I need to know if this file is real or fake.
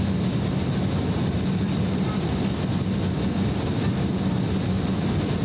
real